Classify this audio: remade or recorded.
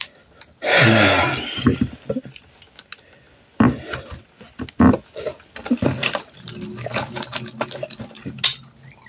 recorded